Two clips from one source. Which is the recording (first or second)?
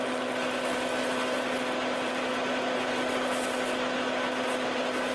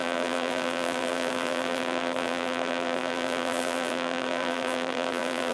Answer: first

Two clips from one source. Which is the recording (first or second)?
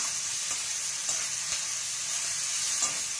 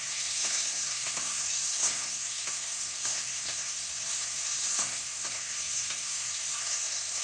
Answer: first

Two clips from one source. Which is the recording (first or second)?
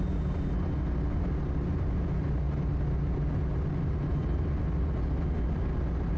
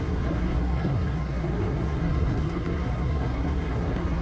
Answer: first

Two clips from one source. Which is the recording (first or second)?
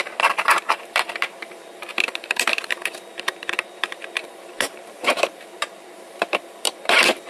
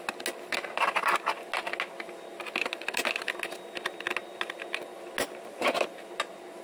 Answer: second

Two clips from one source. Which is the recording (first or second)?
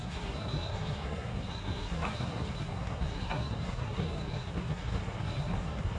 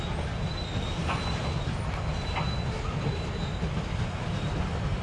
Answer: second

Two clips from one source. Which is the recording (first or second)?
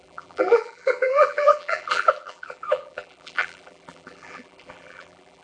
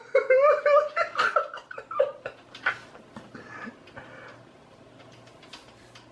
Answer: second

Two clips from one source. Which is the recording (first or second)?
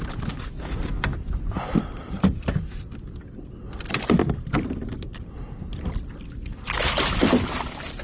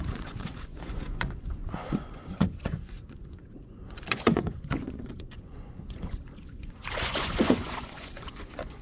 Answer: first